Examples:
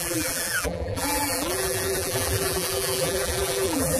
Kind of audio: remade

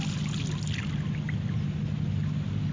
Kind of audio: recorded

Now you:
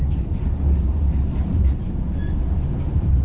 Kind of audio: remade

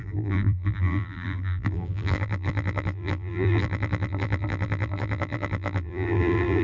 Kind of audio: remade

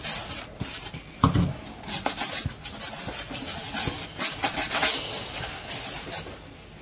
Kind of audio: recorded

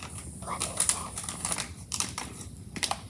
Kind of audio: remade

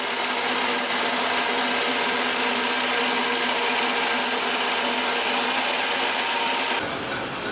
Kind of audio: recorded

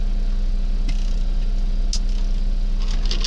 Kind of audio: recorded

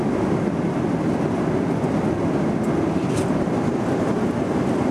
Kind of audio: recorded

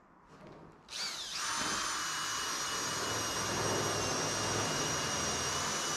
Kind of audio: recorded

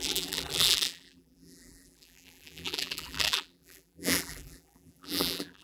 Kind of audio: remade